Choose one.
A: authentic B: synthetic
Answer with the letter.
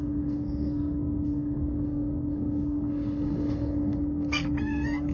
B